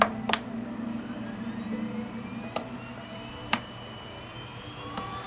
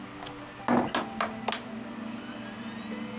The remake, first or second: first